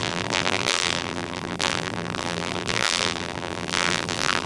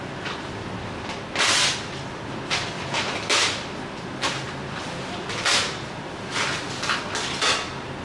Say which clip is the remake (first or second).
first